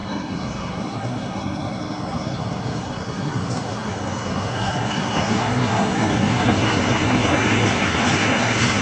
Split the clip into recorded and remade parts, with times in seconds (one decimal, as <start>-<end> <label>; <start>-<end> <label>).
0.0-8.8 remade